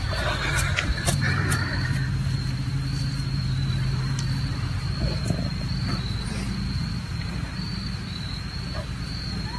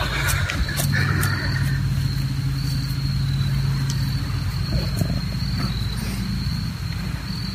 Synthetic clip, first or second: first